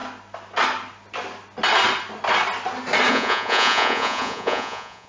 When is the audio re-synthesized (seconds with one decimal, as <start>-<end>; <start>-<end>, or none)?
3.1-5.1